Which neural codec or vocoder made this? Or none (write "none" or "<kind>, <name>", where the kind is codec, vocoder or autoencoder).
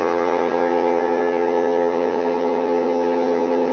vocoder, HiFi-GAN